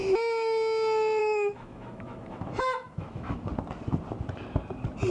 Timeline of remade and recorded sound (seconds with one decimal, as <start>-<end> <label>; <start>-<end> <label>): 0.0-1.2 recorded; 1.2-3.5 remade; 3.5-5.1 recorded